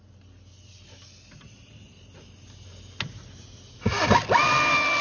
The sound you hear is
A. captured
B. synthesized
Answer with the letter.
A